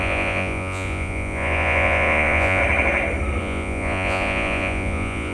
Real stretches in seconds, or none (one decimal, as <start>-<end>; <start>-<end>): 2.6-3.4